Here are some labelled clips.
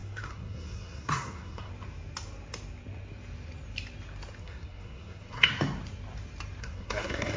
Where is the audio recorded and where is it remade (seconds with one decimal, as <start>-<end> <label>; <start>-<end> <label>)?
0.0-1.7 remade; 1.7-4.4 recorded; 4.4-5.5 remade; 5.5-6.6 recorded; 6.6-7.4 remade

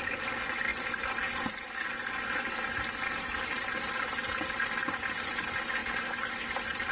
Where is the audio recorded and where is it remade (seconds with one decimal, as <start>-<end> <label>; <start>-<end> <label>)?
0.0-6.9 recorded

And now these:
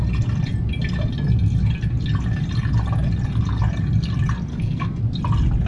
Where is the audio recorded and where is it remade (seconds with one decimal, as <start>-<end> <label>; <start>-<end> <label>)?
0.0-4.5 recorded; 4.5-5.0 remade; 5.0-5.7 recorded

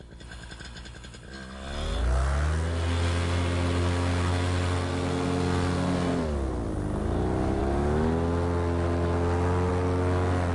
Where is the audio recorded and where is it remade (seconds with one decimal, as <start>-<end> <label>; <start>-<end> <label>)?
0.0-3.8 recorded; 3.8-4.3 remade; 4.3-10.5 recorded